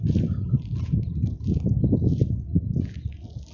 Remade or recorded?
recorded